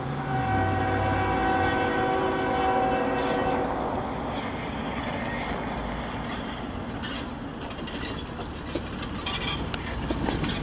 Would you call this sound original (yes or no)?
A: yes